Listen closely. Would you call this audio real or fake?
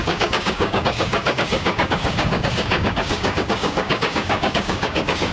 fake